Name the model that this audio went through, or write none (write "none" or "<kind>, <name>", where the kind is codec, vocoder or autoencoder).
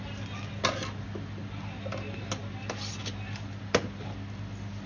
none